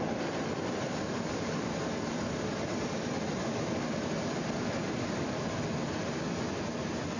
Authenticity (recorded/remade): recorded